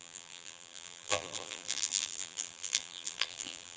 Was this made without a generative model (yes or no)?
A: no